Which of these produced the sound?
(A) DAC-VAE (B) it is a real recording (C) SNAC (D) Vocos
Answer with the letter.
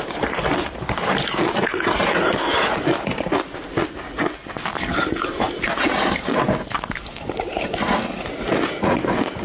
B